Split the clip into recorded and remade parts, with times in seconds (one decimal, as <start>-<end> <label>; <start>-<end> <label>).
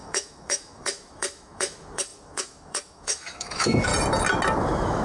0.0-3.9 remade; 3.9-4.6 recorded; 4.6-5.0 remade